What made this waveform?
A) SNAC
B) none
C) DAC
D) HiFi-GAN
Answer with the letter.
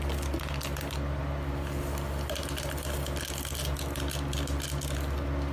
B